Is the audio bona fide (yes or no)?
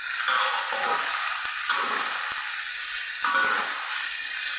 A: yes